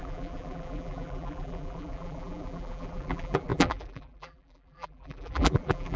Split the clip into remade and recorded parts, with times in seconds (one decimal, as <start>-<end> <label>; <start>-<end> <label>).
0.0-6.0 remade